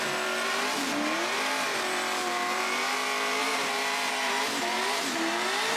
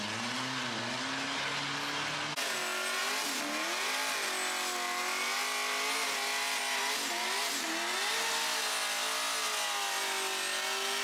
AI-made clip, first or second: first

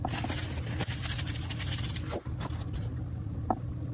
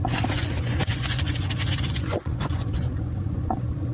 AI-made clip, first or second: second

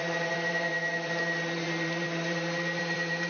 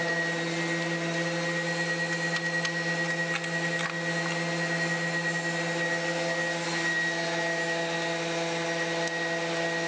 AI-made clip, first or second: first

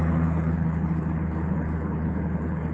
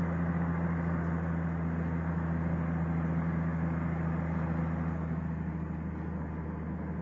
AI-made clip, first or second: first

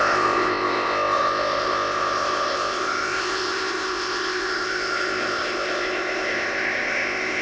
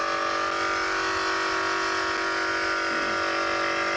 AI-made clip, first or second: first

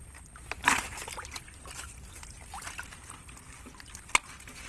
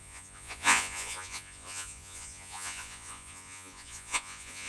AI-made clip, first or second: second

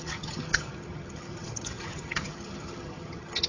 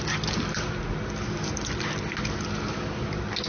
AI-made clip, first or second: first